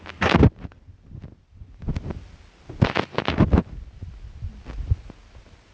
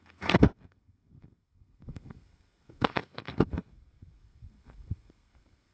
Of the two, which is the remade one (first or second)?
second